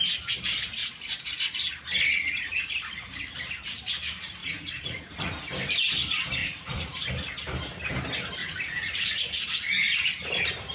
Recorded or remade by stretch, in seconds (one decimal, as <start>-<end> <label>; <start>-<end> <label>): 0.0-4.4 recorded; 4.4-5.4 remade; 5.4-6.4 recorded; 6.4-7.1 remade; 7.1-8.4 recorded; 8.4-9.2 remade; 9.2-10.7 recorded